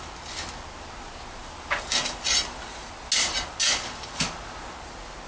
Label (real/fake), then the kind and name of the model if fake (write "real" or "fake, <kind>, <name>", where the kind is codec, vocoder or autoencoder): real